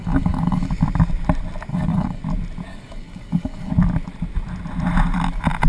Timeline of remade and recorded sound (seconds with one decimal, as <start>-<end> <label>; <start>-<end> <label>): 0.0-0.7 remade; 0.7-1.7 recorded; 1.7-2.2 remade; 2.2-2.7 recorded; 2.7-3.7 remade; 3.7-5.7 recorded